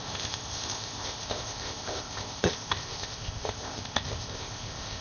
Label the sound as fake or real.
fake